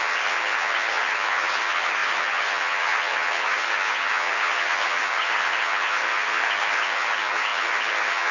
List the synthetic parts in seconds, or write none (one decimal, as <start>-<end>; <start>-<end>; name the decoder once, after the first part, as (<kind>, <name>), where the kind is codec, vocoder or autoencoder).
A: 0.0-8.3 (vocoder, HiFi-GAN)